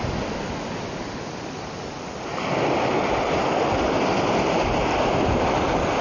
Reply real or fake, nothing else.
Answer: real